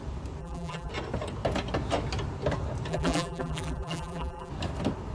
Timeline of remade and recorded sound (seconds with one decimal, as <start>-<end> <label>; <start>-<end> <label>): 0.0-0.4 recorded; 0.4-0.9 remade; 0.9-2.9 recorded; 2.9-4.5 remade; 4.5-5.1 recorded